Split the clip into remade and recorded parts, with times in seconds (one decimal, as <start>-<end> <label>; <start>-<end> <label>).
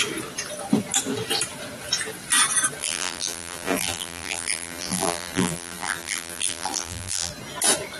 0.0-2.8 recorded; 2.8-7.3 remade; 7.3-8.0 recorded